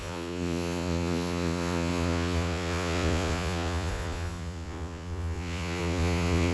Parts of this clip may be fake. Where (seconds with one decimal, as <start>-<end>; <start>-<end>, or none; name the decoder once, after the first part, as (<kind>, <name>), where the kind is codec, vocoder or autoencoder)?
0.0-6.5 (vocoder, Vocos)